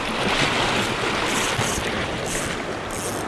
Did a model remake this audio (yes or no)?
no